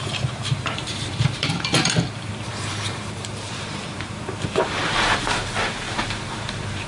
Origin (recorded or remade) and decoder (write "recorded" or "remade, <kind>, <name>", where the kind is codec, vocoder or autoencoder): remade, vocoder, BigVGAN v2